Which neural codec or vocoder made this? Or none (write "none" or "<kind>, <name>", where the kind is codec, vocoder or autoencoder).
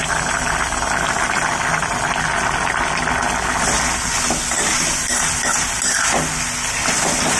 none